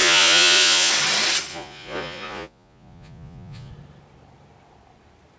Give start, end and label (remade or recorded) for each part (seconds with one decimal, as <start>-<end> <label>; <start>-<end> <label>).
0.0-0.9 remade; 0.9-1.5 recorded; 1.5-3.7 remade; 3.7-5.4 recorded